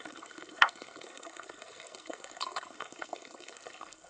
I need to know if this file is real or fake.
fake